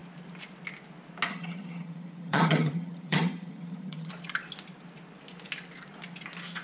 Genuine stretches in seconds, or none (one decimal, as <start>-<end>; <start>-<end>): 0.0-1.3; 4.1-6.6